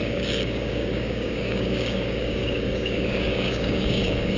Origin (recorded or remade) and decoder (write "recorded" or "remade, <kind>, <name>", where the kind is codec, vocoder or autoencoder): remade, codec, DAC